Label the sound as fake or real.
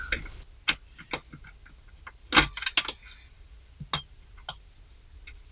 real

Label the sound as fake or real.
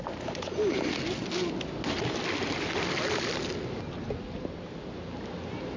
real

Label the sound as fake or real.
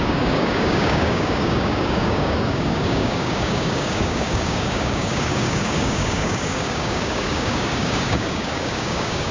fake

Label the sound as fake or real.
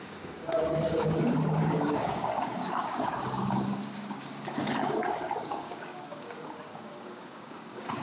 fake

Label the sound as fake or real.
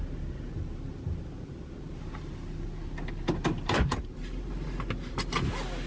real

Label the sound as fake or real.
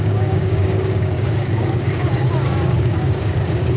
fake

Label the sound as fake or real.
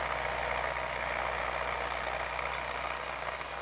real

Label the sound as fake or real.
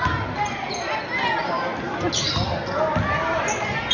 real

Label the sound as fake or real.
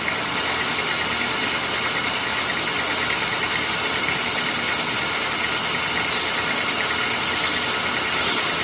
real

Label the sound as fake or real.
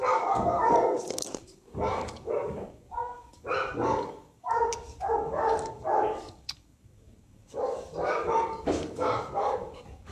fake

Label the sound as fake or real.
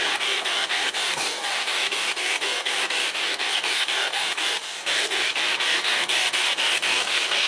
fake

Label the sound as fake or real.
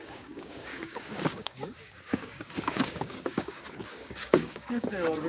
fake